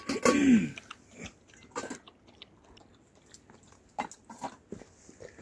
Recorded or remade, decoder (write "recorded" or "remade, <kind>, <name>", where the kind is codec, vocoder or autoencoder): recorded